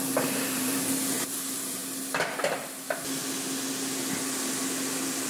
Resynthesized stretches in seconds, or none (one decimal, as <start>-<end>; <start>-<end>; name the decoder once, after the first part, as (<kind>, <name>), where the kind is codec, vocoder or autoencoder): 0.0-1.8 (vocoder, BigVGAN v2)